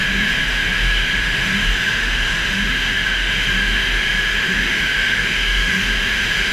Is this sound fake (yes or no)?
yes